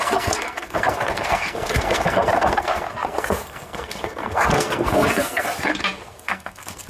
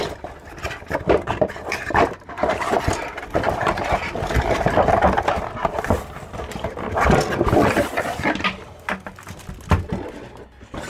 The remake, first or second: first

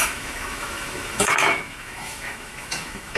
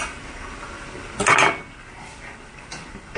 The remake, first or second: first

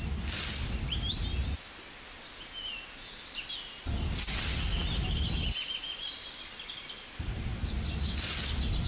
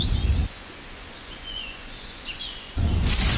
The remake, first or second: second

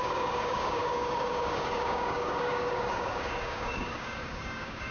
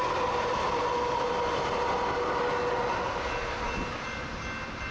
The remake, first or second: first